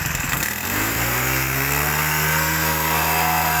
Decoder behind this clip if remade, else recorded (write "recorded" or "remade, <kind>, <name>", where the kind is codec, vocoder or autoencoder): remade, codec, SNAC